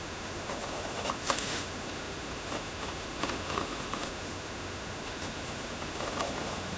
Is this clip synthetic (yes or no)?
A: yes